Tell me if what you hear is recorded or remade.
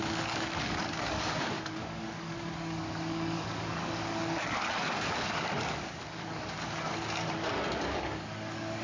remade